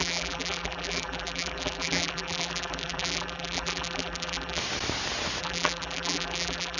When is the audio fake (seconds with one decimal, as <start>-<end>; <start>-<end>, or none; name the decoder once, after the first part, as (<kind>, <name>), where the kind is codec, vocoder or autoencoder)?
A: 0.0-4.6 (vocoder, BigVGAN v2); 5.4-6.8